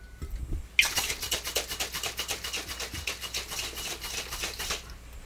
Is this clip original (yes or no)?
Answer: yes